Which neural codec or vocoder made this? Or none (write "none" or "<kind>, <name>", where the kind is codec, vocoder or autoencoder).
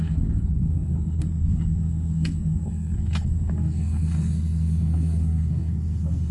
codec, SNAC